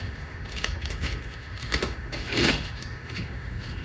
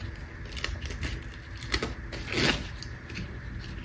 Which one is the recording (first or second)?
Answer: second